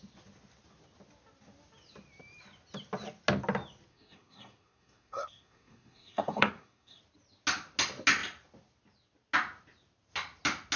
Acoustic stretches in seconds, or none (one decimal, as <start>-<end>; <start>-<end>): 0.0-3.9; 7.0-10.8